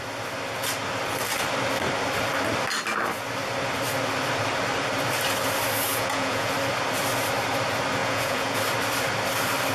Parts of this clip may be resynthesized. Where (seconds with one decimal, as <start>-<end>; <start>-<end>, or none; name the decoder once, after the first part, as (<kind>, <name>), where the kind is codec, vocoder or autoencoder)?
5.9-6.5 (vocoder, Vocos); 8.0-8.6